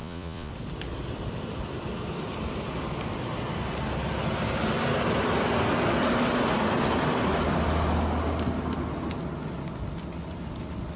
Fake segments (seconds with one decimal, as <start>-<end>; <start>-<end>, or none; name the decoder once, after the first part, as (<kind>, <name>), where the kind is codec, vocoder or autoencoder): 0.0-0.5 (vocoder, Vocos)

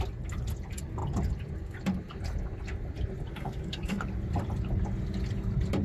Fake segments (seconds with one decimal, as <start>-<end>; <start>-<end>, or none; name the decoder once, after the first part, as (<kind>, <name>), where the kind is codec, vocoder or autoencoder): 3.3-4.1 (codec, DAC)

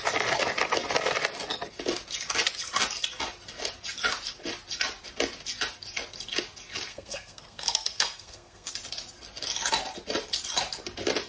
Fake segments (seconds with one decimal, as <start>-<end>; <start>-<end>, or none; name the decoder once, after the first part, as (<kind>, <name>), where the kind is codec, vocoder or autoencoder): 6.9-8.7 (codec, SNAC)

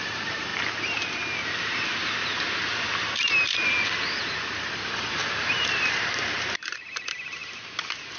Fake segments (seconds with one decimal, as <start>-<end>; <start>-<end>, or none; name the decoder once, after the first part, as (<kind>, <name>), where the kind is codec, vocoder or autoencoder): 0.0-0.5 (vocoder, BigVGAN v2); 4.8-8.2